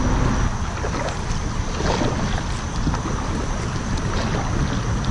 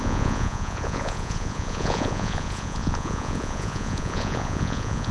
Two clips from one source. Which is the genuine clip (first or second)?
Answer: first